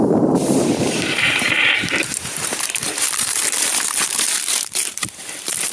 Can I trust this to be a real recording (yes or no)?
no